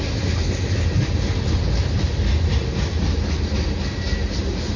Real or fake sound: real